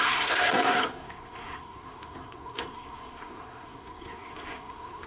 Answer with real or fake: fake